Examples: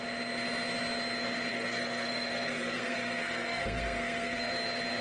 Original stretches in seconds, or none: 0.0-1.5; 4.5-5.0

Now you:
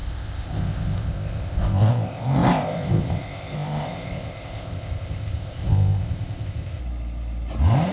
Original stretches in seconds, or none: 6.8-7.9

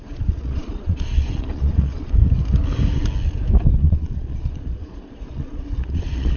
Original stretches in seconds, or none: 2.2-3.7